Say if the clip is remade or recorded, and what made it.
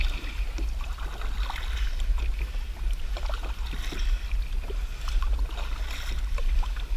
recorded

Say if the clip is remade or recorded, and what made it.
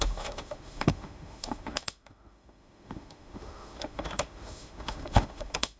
remade, autoencoder, DAC-VAE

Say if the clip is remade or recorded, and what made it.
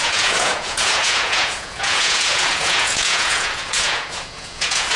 remade, vocoder, Vocos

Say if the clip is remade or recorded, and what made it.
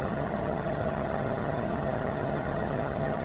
remade, vocoder, HiFi-GAN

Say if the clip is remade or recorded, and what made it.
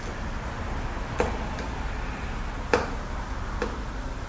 recorded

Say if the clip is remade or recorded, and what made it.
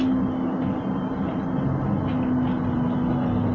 recorded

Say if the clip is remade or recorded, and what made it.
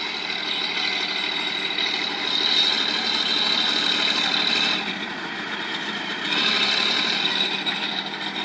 remade, vocoder, BigVGAN v2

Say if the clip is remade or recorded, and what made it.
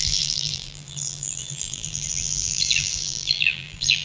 remade, vocoder, BigVGAN v2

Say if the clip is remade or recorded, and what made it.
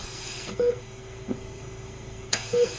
remade, codec, SNAC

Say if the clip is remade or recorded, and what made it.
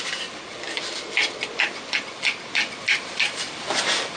recorded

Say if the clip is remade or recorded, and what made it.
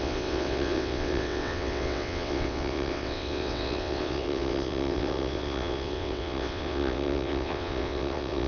remade, vocoder, WaveNeXt